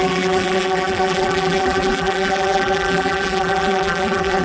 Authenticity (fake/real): fake